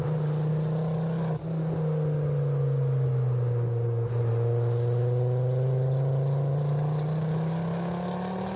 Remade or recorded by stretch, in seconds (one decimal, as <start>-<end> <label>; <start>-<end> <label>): 0.0-8.6 recorded